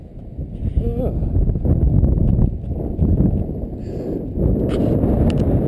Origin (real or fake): real